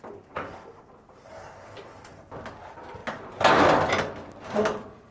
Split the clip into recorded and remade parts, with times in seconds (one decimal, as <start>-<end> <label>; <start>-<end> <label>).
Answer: 0.0-5.1 recorded